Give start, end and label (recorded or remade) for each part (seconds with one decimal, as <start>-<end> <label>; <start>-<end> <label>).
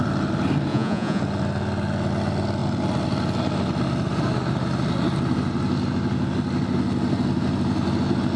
0.0-0.7 recorded; 0.7-1.2 remade; 1.2-8.4 recorded